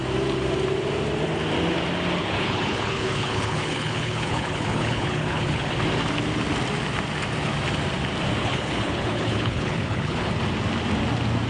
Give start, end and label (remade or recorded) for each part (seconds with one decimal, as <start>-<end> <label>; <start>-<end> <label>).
0.0-2.2 recorded; 2.2-5.7 remade; 5.7-8.4 recorded; 8.4-10.3 remade; 10.3-11.5 recorded